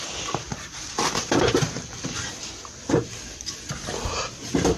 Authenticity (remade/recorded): recorded